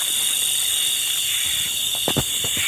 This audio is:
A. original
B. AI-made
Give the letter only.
A